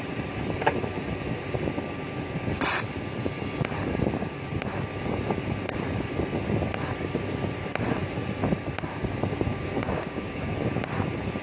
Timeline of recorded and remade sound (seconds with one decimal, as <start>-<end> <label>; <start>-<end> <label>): 0.0-9.5 recorded; 9.5-10.8 remade; 10.8-11.4 recorded